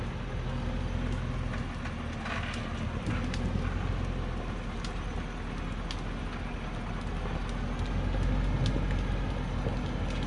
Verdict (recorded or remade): recorded